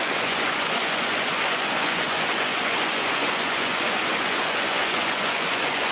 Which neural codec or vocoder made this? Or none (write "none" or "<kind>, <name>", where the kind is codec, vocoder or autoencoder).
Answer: vocoder, Vocos